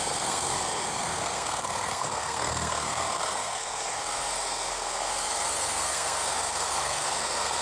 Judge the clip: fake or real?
fake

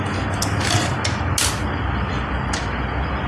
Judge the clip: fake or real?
real